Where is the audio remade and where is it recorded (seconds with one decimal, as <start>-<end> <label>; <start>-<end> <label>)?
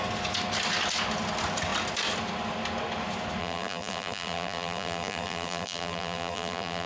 0.0-3.4 recorded; 3.4-6.9 remade